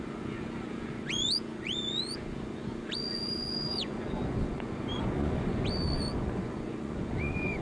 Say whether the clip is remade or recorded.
remade